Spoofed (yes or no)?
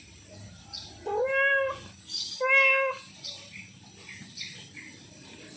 no